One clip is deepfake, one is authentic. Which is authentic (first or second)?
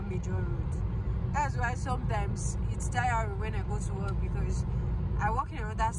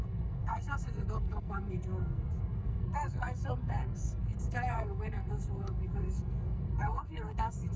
first